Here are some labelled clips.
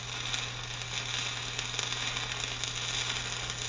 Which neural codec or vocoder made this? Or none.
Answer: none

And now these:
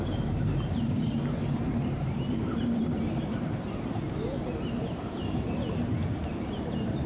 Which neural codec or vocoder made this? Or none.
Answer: vocoder, BigVGAN v2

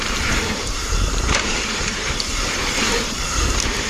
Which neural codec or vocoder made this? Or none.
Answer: vocoder, BigVGAN v2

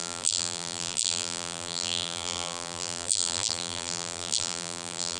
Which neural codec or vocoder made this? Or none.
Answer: vocoder, BigVGAN v2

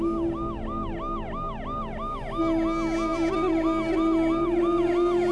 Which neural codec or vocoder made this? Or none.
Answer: none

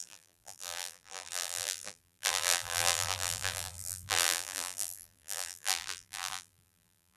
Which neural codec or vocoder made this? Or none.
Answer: vocoder, BigVGAN v2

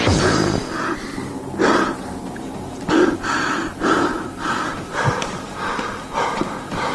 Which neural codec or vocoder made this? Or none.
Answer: vocoder, BigVGAN v2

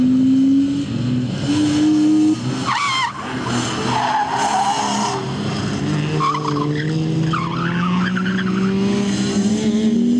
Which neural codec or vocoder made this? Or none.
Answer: none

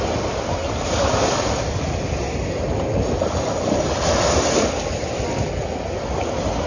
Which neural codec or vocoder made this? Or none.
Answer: none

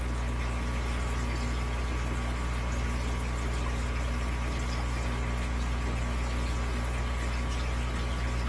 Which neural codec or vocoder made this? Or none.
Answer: none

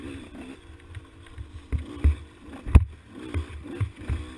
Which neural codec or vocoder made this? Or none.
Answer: none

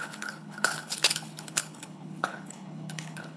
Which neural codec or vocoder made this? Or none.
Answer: codec, HILCodec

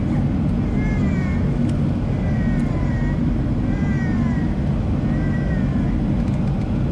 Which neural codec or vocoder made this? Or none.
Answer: none